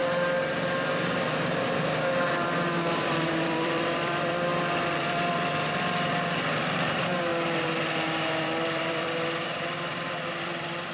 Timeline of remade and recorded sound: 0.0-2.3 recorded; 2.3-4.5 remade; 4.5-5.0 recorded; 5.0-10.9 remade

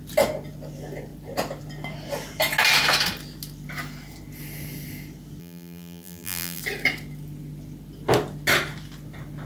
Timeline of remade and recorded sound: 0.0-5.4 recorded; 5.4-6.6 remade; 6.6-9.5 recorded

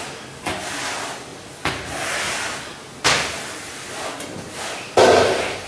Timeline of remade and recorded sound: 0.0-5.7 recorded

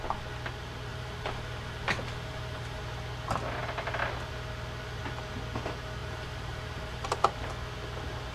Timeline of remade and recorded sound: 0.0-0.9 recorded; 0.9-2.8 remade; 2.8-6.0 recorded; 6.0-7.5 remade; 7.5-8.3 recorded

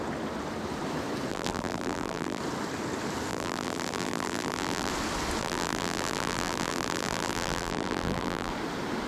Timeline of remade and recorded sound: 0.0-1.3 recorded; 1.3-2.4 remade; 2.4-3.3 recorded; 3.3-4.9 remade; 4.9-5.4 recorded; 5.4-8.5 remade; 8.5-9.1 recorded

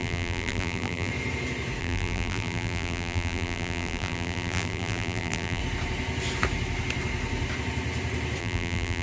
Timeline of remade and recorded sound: 0.0-1.1 remade; 1.1-1.8 recorded; 1.8-5.6 remade; 5.6-8.4 recorded; 8.4-9.0 remade